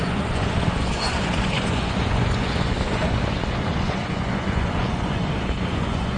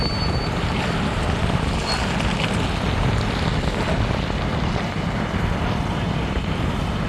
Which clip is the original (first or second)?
second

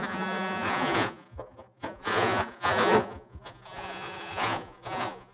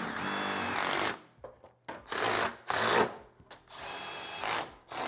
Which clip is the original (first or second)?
second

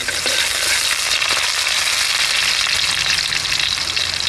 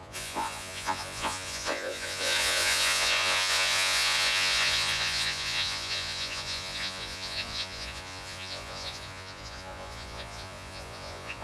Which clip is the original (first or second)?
first